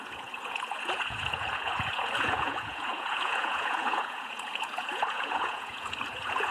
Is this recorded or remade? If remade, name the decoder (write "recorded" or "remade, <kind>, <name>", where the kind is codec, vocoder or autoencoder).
remade, vocoder, Vocos